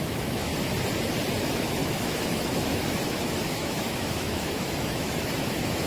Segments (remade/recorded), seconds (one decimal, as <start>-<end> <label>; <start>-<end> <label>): 0.0-0.5 remade; 0.5-1.4 recorded; 1.4-5.9 remade